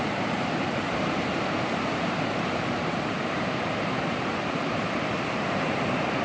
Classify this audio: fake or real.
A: fake